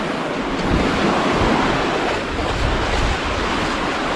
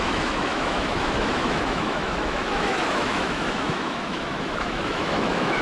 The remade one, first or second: second